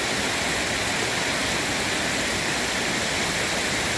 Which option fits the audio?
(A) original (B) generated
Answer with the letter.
A